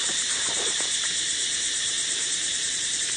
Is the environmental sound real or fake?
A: fake